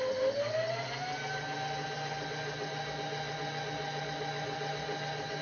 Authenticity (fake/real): real